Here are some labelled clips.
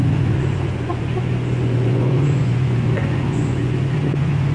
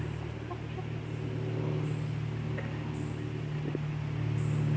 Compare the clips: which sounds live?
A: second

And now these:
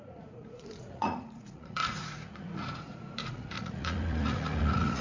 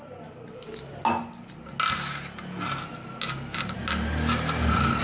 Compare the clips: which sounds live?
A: second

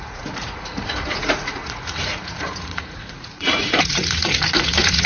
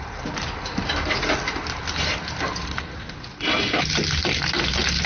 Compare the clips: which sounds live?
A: second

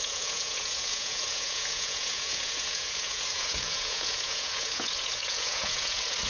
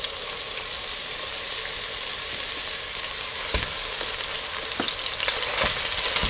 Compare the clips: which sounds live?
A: second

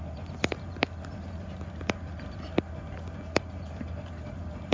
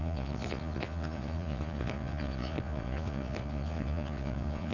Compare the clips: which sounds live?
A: first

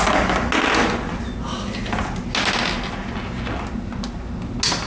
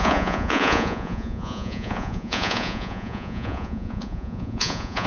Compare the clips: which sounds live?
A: first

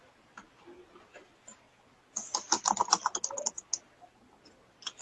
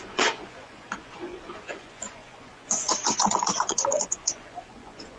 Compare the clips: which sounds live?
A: first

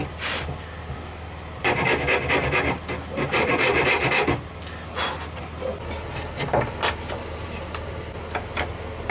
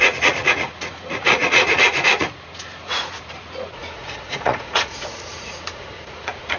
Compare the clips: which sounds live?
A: first